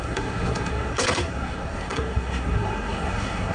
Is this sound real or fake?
fake